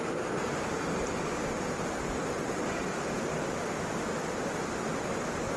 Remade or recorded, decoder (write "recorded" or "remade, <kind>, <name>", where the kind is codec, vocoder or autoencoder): recorded